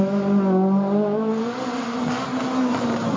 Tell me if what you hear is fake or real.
real